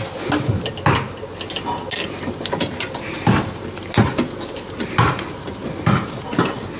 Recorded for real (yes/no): yes